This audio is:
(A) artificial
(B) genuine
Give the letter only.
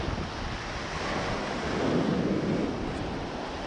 B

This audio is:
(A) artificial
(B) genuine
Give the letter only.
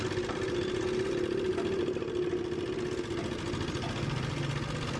B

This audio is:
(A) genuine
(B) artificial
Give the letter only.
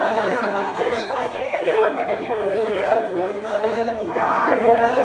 B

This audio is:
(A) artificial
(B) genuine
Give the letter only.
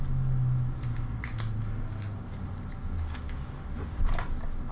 B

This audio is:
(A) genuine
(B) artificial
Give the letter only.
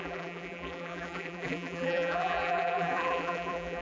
B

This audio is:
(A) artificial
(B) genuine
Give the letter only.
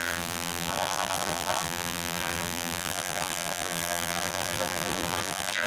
A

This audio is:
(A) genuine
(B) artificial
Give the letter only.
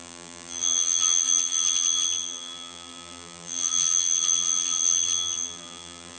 B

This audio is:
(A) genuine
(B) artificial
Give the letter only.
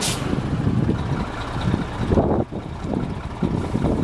A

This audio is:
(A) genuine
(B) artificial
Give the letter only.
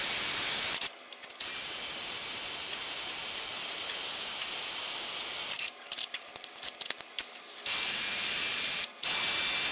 A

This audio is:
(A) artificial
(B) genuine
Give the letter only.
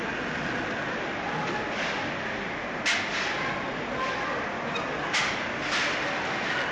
B